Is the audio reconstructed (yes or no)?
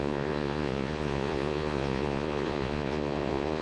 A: yes